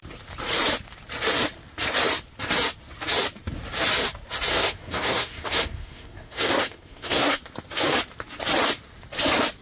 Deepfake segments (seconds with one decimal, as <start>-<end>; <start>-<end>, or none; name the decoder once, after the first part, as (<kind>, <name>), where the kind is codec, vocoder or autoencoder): 4.5-7.4 (codec, SNAC)